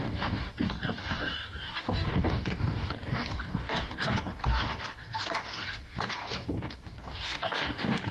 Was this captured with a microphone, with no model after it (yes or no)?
no